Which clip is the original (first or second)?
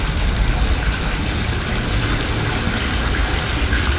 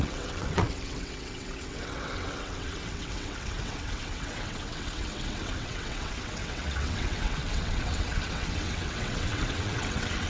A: first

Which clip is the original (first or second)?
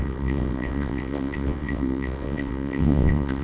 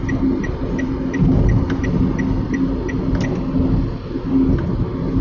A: second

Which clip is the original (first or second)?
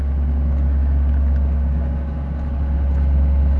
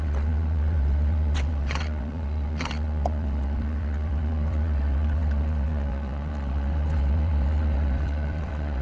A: first